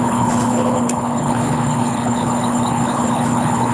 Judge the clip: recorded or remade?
remade